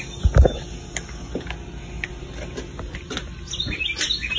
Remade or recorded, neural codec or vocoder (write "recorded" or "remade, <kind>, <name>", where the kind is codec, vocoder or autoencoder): recorded